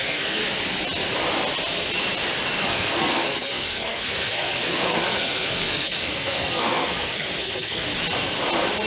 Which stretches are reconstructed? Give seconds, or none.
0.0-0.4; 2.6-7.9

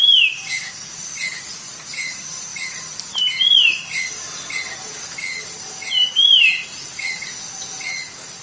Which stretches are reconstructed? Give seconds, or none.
none

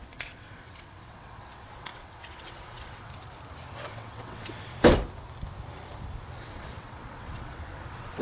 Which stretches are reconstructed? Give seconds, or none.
0.0-3.1; 3.9-4.7; 6.4-8.2

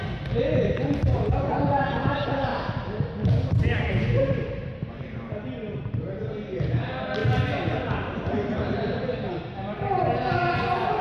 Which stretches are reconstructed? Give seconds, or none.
none

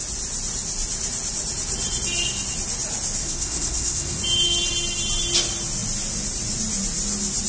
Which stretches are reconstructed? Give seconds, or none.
3.2-4.2

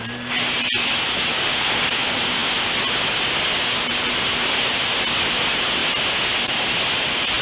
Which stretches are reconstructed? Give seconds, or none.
1.3-2.0

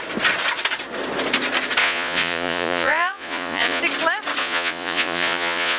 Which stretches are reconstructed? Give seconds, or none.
1.8-3.8; 4.4-5.8